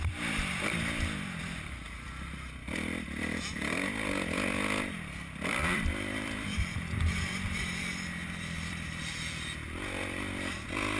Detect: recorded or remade remade